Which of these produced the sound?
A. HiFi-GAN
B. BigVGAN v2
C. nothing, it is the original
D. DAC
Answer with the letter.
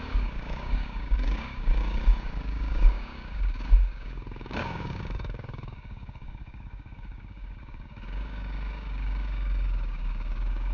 D